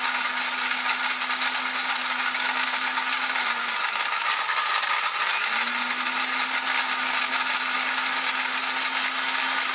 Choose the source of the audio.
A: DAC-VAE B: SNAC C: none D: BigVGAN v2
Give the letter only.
C